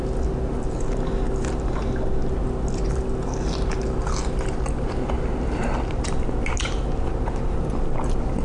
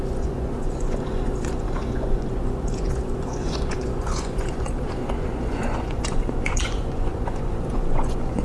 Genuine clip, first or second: first